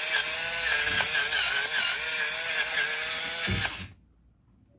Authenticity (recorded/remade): recorded